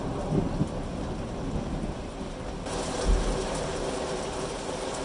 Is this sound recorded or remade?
recorded